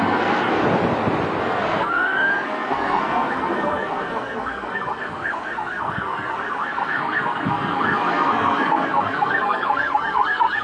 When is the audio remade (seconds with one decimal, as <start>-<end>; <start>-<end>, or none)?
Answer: 0.0-0.6; 1.4-10.6